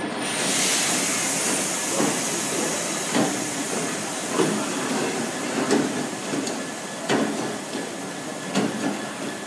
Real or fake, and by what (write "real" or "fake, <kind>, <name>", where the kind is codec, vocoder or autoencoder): real